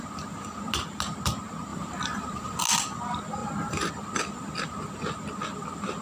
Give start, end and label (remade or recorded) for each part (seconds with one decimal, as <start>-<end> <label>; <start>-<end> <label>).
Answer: 0.0-1.7 recorded; 1.7-2.6 remade; 2.6-3.4 recorded; 3.4-3.9 remade; 3.9-6.0 recorded